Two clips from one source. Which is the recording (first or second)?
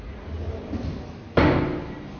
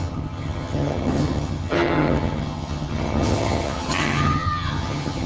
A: first